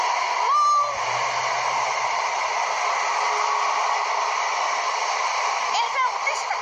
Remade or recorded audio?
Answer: recorded